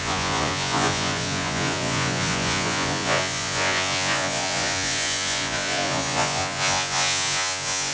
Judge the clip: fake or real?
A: fake